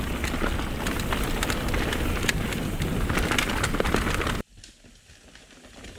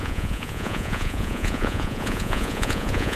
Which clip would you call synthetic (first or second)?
second